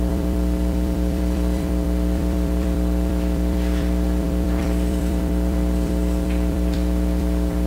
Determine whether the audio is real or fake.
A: fake